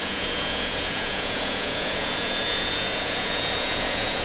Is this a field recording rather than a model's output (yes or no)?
no